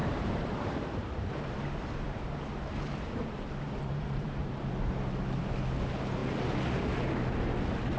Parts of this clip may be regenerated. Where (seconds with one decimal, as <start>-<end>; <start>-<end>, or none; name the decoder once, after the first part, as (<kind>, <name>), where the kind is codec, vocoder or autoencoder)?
0.0-1.6 (vocoder, BigVGAN v2); 2.7-4.5